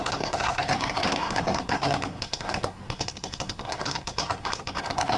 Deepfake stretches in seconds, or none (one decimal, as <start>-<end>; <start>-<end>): 0.0-5.2